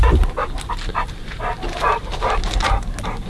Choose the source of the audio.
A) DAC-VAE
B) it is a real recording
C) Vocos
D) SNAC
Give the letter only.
B